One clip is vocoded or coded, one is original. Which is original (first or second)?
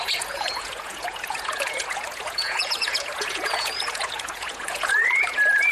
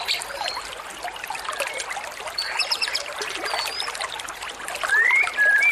second